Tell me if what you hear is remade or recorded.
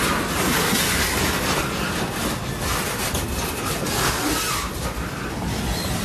recorded